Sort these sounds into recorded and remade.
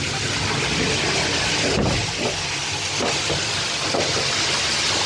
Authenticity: recorded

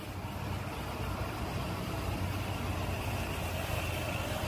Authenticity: recorded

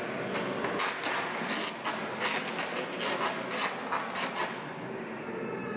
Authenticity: recorded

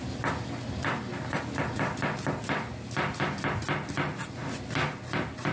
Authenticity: recorded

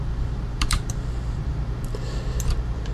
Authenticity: remade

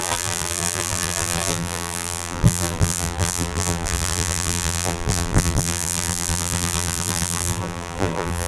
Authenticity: remade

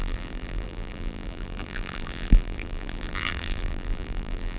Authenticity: remade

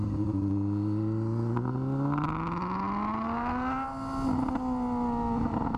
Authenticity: recorded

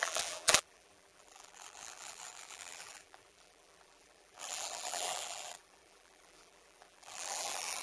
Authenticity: remade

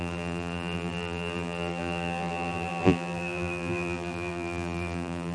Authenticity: remade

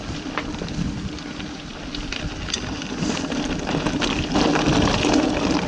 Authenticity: recorded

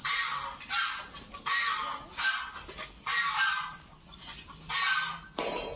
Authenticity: recorded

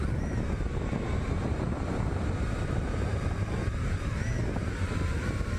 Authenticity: remade